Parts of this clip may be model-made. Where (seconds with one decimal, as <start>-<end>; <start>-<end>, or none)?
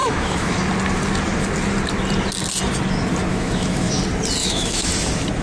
0.0-0.6; 3.3-4.0; 4.4-4.9